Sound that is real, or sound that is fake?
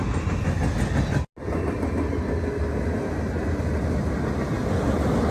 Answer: real